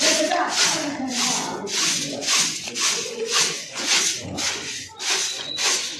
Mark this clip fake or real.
fake